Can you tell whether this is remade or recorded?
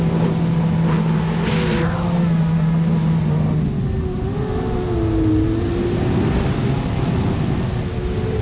recorded